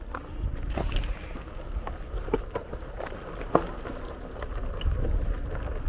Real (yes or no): yes